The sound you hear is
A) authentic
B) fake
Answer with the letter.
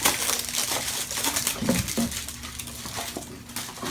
A